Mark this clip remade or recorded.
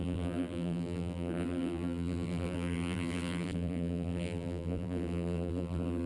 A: remade